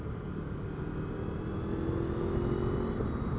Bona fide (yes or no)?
yes